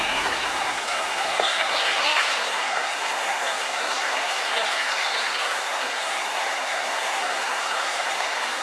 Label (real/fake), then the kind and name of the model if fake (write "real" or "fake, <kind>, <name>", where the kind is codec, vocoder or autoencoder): fake, codec, SNAC